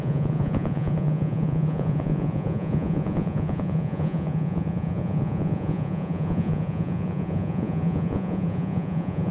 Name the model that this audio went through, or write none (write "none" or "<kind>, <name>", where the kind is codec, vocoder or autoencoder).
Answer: vocoder, Vocos